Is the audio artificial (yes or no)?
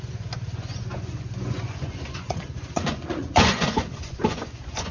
yes